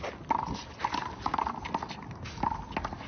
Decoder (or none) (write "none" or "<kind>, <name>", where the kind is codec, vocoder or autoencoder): none